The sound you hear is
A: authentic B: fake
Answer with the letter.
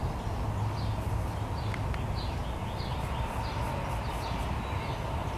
A